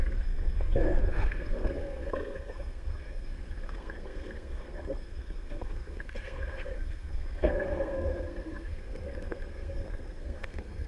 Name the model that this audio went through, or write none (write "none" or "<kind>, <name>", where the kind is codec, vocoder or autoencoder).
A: codec, SNAC